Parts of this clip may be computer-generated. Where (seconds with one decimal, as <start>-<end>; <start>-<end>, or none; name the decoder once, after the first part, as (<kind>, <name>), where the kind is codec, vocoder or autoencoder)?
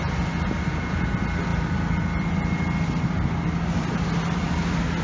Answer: none